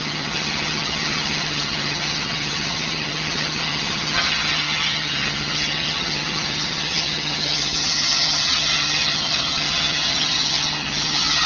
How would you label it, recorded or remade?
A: remade